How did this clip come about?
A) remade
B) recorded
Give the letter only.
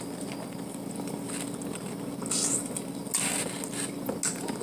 B